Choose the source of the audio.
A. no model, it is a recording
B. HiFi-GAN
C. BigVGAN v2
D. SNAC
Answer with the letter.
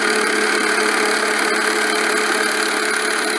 A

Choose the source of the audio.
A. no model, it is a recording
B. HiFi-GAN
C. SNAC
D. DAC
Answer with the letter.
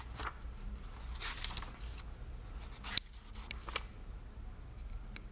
A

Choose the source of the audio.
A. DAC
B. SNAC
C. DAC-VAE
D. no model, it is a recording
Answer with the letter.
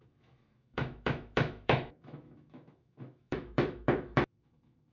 C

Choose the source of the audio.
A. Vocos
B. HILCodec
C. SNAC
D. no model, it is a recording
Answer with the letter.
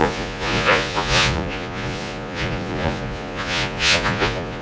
A